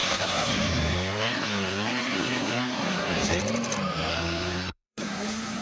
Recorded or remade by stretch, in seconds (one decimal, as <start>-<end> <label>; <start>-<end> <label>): 0.0-3.4 remade; 3.4-4.1 recorded; 4.1-5.6 remade